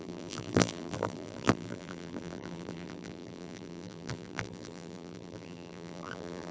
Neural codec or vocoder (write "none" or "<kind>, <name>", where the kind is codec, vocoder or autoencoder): vocoder, BigVGAN v2